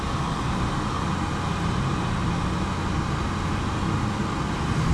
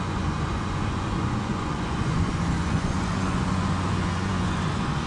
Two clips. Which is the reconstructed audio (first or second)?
second